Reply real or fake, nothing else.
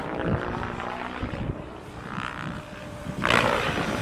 fake